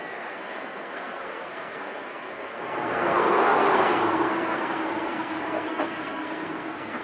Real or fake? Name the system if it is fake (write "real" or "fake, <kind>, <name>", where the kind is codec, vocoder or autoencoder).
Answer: fake, codec, SNAC